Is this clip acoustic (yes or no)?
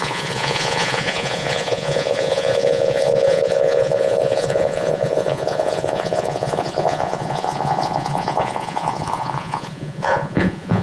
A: no